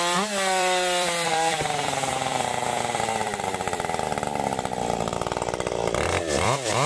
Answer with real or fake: fake